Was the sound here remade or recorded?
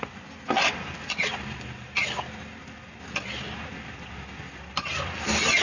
recorded